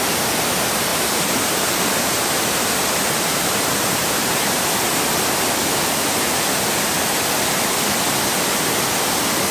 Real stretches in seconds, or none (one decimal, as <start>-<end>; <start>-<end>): 0.0-0.9; 5.0-9.5

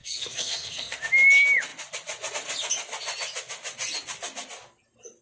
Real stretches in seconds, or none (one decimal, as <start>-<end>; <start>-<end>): 1.0-5.2